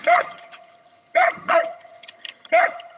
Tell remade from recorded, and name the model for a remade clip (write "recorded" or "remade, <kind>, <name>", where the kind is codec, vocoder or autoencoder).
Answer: remade, vocoder, HiFi-GAN